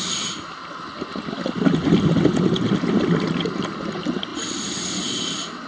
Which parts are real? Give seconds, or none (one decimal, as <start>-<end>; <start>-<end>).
0.0-5.7